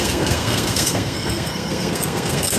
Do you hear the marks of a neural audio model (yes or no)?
yes